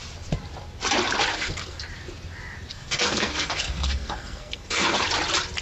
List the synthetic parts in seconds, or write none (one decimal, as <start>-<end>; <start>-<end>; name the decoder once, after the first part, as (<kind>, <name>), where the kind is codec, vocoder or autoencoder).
1.3-1.8 (codec, SNAC); 2.7-5.0